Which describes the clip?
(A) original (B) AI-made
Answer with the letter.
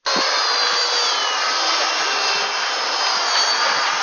A